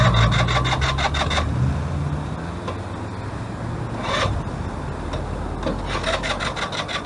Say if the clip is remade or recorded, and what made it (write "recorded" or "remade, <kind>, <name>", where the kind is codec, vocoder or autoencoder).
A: recorded